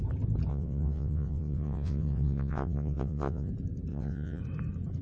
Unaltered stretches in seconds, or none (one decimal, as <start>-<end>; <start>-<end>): 0.0-0.5; 3.5-3.9; 4.4-5.0